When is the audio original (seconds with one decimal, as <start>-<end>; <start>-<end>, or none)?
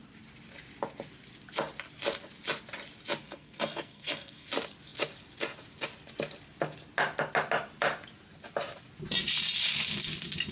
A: 0.0-3.2; 4.5-10.5